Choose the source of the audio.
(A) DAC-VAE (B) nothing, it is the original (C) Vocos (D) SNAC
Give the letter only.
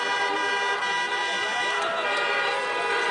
B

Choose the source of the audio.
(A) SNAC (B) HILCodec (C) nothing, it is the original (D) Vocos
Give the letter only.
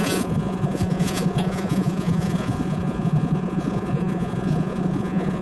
D